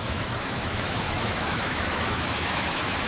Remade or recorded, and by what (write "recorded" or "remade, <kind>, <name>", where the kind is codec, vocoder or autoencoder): remade, autoencoder, DAC-VAE